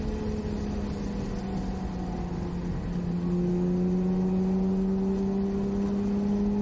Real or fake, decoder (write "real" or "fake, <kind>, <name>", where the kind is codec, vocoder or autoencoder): real